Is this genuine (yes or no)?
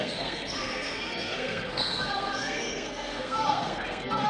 no